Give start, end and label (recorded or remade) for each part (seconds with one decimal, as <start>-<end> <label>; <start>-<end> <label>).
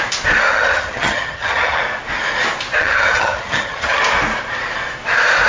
0.0-0.5 recorded; 0.5-1.8 remade; 1.8-2.8 recorded; 2.8-4.0 remade; 4.0-5.5 recorded